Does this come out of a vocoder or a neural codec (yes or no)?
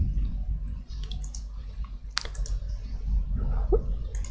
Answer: no